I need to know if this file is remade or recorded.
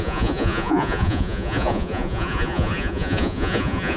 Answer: remade